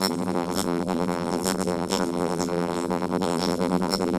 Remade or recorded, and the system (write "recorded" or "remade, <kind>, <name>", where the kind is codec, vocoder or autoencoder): remade, vocoder, BigVGAN v2